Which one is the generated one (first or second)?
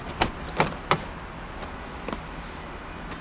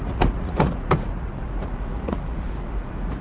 second